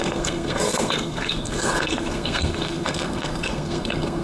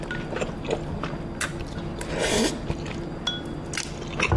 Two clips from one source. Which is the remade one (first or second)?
first